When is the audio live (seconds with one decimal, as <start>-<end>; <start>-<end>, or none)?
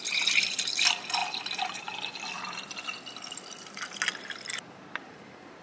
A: 0.0-5.6